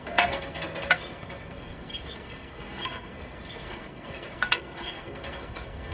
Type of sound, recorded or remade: remade